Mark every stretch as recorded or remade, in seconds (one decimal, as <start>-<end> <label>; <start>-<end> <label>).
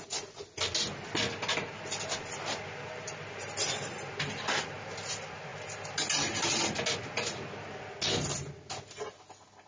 0.0-9.7 recorded